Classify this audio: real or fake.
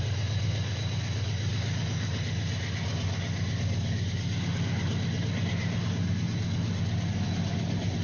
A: real